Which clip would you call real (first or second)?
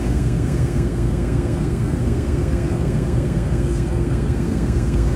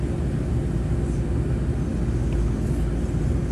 second